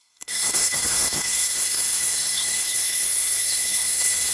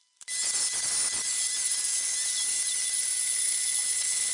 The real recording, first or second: second